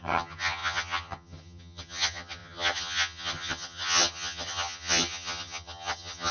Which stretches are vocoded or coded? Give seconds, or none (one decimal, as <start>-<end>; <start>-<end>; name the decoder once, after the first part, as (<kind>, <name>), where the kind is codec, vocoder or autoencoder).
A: 0.0-6.3 (vocoder, HiFi-GAN)